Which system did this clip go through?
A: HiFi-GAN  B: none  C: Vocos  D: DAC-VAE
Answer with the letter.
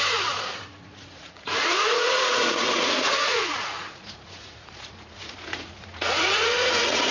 C